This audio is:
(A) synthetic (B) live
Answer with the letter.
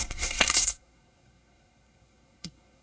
A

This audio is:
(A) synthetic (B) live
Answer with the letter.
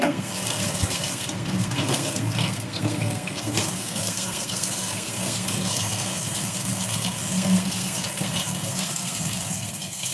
A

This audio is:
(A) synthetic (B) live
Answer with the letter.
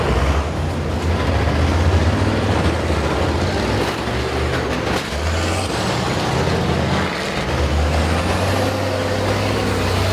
B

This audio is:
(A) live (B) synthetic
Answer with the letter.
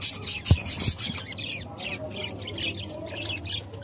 A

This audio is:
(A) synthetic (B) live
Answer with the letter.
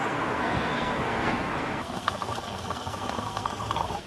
A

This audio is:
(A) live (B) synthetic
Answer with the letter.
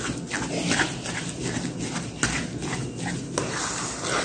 A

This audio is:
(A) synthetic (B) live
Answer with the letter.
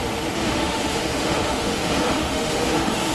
A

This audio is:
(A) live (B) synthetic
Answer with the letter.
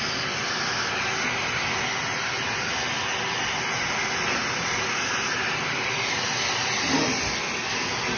A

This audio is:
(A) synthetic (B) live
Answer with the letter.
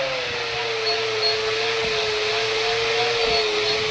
B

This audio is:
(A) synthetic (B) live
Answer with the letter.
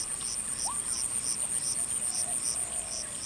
B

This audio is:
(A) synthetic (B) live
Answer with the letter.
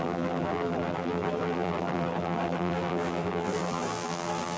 A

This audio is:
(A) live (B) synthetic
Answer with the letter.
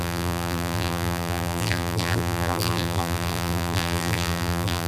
B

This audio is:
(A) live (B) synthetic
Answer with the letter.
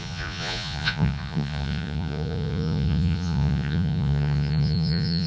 B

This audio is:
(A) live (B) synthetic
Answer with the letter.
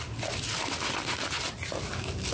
A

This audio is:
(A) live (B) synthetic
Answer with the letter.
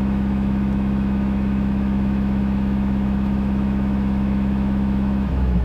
B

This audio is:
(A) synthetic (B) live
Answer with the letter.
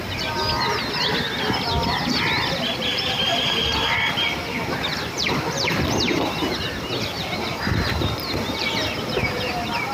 A